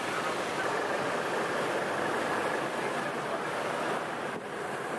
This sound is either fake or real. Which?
real